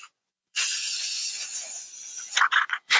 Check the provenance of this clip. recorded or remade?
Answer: remade